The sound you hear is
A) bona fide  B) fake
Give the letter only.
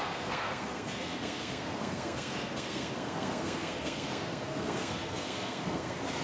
B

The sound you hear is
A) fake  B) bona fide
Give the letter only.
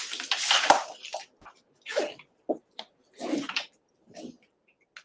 B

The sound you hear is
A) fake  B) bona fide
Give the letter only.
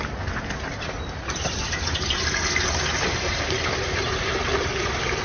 B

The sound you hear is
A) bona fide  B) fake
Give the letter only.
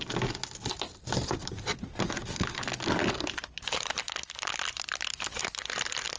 A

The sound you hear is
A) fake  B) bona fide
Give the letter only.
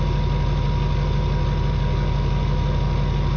B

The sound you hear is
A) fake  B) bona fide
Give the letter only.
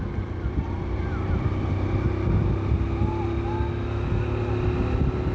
B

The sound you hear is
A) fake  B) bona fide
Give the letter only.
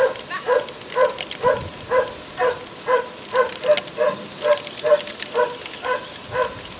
B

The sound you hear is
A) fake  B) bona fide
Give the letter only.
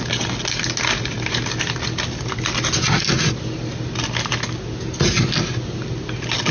B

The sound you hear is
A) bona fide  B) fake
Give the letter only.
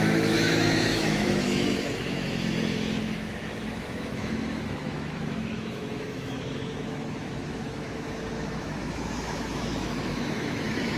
B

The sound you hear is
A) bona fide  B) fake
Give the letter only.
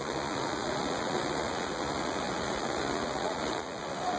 B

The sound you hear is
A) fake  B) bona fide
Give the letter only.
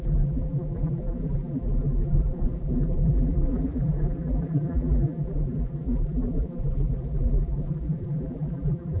A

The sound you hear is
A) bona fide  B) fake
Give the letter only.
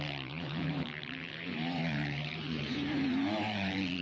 B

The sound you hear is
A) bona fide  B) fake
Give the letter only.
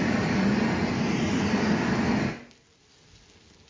A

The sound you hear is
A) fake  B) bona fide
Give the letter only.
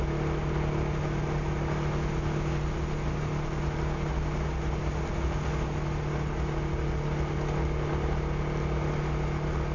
B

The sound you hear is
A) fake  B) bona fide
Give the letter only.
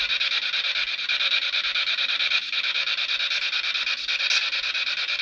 B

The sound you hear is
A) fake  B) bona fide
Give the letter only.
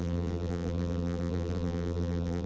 A